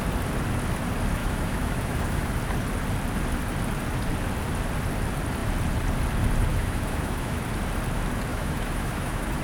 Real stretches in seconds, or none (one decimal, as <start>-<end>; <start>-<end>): 0.0-1.2; 2.3-6.5; 7.4-8.3